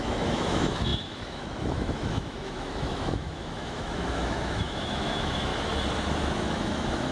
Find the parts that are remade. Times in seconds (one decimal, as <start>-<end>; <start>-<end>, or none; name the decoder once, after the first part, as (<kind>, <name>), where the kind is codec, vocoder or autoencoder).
0.0-5.5 (autoencoder, DAC-VAE); 6.2-7.1